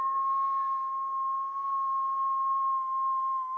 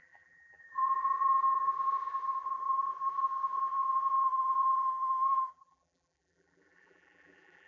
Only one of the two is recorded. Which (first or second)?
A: first